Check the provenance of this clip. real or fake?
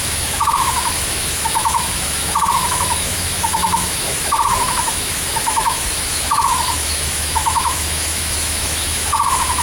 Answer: fake